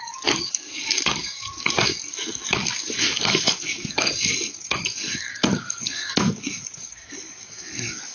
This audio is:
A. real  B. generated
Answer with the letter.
B